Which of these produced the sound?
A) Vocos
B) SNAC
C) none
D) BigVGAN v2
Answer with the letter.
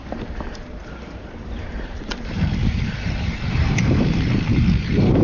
D